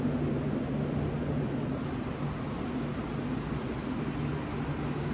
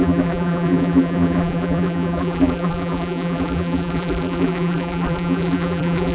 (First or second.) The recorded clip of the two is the first